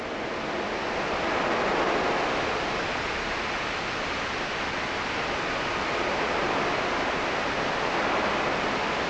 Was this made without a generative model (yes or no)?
yes